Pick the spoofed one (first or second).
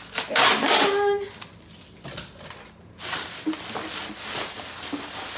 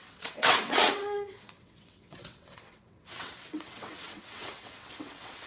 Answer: second